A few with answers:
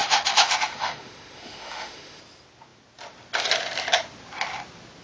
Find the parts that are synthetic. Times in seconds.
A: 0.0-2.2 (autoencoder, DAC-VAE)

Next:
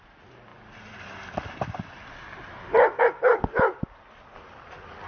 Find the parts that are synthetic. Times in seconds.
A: none

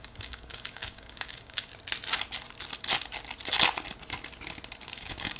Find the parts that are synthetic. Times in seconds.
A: 0.0-1.7 (codec, DAC); 4.9-5.4

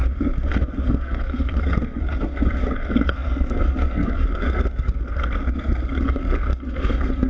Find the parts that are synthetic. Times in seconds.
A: 0.0-7.3 (codec, SNAC)

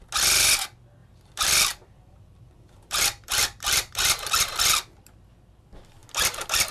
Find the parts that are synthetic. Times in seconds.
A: 1.0-4.6 (vocoder, BigVGAN v2)